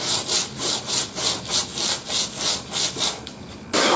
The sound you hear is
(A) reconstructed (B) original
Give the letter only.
B